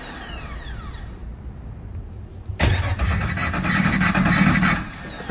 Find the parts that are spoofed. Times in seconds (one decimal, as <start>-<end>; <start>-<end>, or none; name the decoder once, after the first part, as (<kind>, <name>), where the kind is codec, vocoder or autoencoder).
none